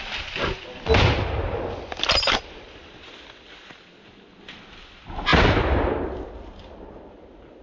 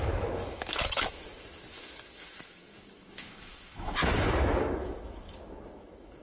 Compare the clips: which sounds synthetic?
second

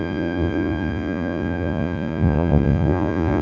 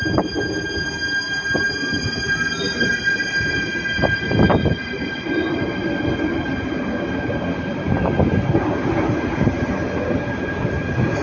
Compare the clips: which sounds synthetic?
first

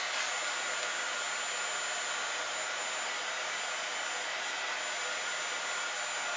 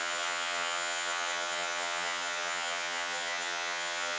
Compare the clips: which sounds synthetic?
second